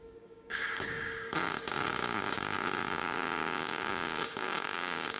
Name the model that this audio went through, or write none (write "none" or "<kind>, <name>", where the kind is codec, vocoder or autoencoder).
codec, DAC